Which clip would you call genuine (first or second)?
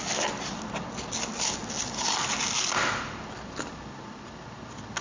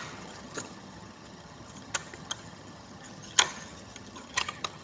first